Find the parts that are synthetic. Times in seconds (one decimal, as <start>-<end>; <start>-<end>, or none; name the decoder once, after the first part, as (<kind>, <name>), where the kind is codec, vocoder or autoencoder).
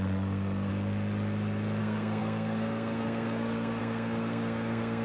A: 0.0-0.7 (codec, SNAC); 1.8-5.0